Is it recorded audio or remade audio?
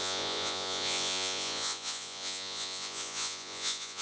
remade